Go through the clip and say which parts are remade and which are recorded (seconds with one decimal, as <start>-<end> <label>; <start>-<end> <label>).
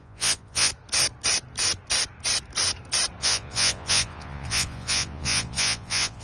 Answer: 0.0-0.7 remade; 0.7-3.2 recorded; 3.2-6.2 remade